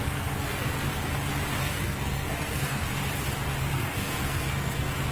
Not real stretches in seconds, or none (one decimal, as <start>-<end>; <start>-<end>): 0.0-1.1; 1.6-3.0; 3.6-5.1